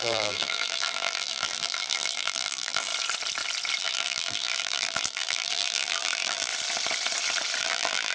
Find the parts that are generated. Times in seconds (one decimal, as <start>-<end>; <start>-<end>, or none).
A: 0.0-2.9; 3.8-6.5; 7.6-8.1

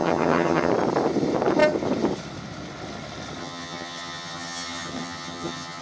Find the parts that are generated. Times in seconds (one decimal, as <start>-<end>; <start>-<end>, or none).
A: 0.0-0.7; 3.4-5.8

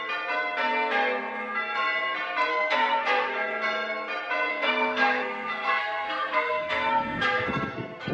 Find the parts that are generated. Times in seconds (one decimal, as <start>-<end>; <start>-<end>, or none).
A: 2.5-3.3; 4.5-8.1

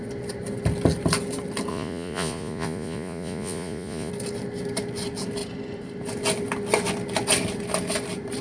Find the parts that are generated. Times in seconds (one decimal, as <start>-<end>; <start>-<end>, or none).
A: 1.7-4.1

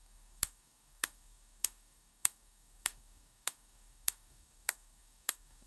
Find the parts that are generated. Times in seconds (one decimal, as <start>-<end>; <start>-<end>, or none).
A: 0.0-5.7

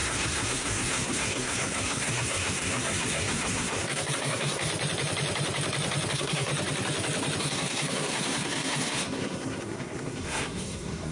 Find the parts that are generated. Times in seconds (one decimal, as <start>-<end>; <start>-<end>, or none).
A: 0.0-4.7; 6.1-6.5; 7.4-11.1

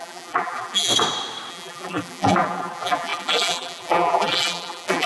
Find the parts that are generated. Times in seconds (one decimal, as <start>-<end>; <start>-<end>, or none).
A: 0.0-0.9; 1.5-5.1

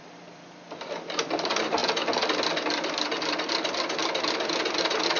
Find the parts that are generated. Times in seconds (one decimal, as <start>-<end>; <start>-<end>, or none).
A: none